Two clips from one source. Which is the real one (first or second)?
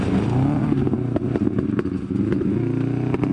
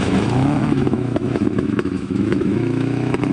first